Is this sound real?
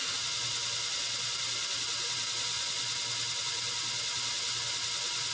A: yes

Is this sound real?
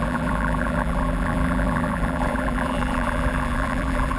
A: no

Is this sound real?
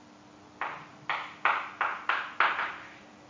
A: yes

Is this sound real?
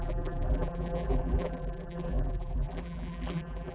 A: no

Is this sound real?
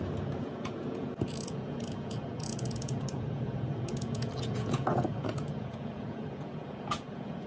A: no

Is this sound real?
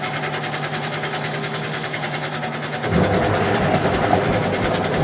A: yes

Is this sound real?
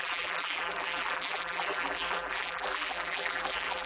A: no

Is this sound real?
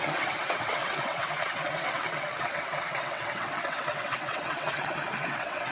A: no